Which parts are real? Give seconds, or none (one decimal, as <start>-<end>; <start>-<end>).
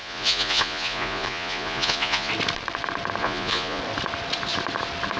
2.3-3.2; 3.8-5.2